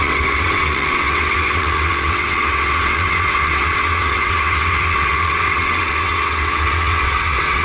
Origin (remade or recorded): remade